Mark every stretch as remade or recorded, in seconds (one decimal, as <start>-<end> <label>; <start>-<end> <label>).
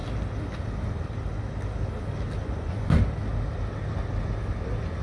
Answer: 0.0-2.4 recorded; 2.4-3.0 remade; 3.0-5.0 recorded